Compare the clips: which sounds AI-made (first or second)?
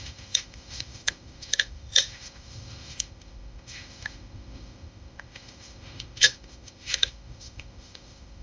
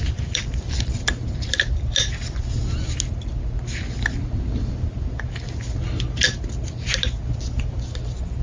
first